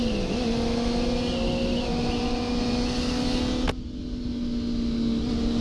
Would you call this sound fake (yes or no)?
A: no